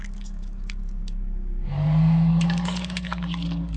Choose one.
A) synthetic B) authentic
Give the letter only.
A